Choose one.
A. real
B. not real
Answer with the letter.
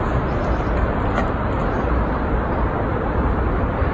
A